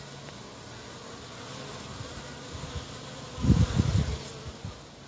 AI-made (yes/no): no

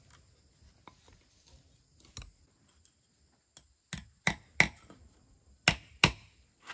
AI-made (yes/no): no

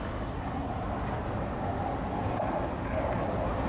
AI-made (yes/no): no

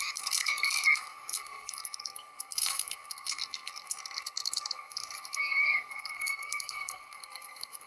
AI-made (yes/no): yes